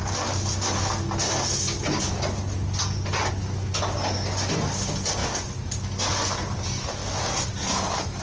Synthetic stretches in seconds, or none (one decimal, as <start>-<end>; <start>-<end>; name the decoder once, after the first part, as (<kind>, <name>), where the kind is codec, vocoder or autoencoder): none